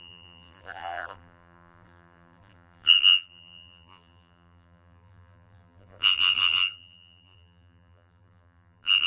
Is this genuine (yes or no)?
no